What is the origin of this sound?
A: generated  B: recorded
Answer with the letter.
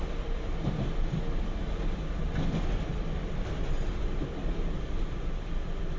B